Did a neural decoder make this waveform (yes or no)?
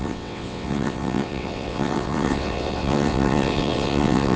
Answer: yes